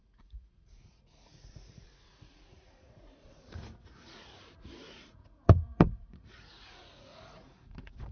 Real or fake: fake